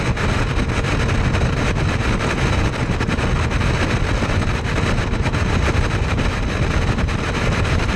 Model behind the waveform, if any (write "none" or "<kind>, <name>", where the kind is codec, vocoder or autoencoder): none